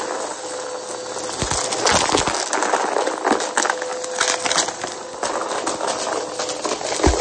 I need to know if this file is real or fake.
real